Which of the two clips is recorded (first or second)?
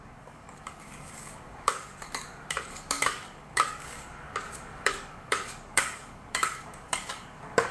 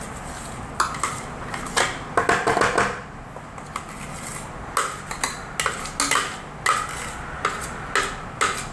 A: second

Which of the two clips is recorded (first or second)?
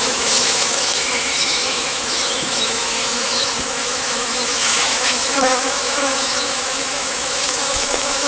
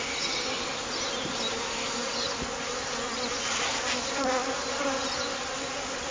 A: second